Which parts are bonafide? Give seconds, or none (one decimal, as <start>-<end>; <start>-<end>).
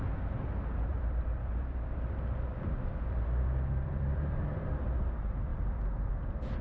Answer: 0.0-0.9; 4.9-5.5